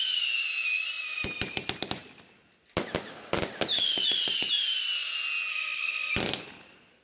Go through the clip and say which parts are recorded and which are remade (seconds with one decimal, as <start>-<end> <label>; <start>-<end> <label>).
0.0-5.5 recorded; 5.5-6.1 remade; 6.1-7.0 recorded